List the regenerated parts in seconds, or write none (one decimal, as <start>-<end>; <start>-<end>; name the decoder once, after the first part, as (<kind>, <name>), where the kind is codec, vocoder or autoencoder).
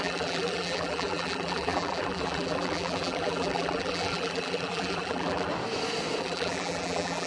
0.0-5.5 (vocoder, BigVGAN v2); 6.2-7.3